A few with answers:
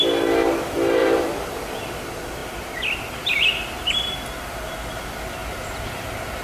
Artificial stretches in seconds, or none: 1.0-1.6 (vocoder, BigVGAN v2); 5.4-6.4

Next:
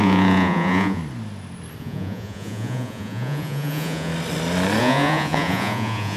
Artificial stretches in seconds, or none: 0.0-1.0 (vocoder, Vocos); 1.8-4.1; 4.8-6.2